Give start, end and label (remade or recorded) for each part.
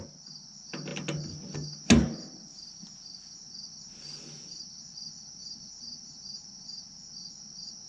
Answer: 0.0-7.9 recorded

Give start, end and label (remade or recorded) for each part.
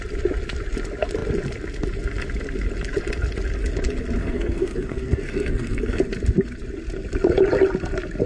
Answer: 0.0-4.2 recorded; 4.2-6.0 remade; 6.0-8.3 recorded